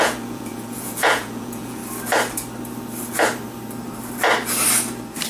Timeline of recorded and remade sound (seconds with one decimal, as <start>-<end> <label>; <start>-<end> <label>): 0.0-1.8 remade; 1.8-5.3 recorded